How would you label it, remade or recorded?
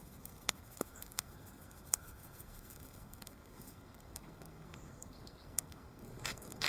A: remade